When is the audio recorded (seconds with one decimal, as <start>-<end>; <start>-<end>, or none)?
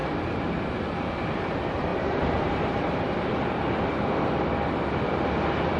0.0-1.9; 3.6-5.8